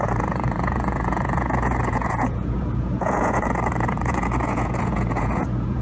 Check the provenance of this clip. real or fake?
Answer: fake